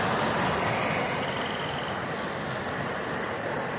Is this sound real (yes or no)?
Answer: yes